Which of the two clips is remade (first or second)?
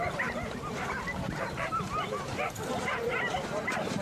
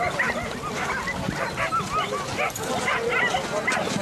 first